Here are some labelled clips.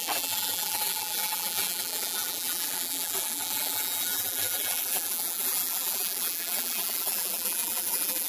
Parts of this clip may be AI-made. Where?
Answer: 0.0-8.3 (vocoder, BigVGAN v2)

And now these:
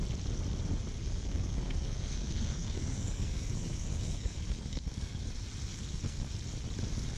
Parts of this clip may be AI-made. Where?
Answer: 1.0-5.3 (codec, SNAC); 5.7-6.3

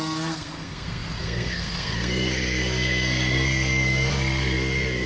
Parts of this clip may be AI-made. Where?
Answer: 0.0-5.1 (codec, SNAC)

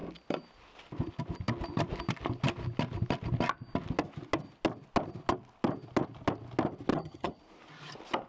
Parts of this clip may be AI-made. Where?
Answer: 6.9-7.4 (vocoder, HiFi-GAN)

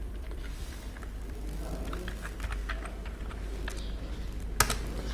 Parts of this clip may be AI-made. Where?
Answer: 0.0-2.6 (vocoder, BigVGAN v2)

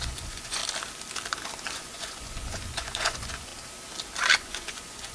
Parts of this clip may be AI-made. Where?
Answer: 0.0-0.6 (vocoder, Vocos); 1.7-3.5; 4.4-5.1

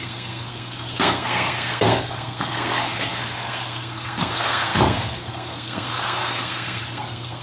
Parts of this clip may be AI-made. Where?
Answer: 0.0-7.4 (codec, SNAC)

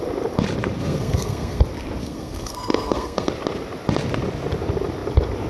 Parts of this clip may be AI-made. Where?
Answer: 0.8-1.6 (codec, SNAC); 2.0-3.3